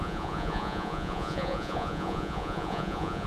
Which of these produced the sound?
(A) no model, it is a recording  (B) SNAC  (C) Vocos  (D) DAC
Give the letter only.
C